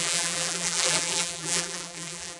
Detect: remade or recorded remade